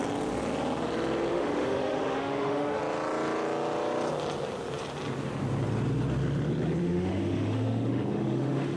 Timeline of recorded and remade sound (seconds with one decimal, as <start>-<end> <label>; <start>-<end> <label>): 0.0-1.3 recorded; 1.3-2.8 remade; 2.8-6.8 recorded; 6.8-8.8 remade